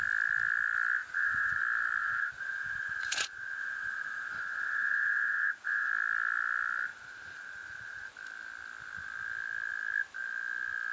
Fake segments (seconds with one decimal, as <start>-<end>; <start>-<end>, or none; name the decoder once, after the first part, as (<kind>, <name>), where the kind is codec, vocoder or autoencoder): 1.0-1.6 (vocoder, Vocos); 2.0-5.9; 6.9-8.1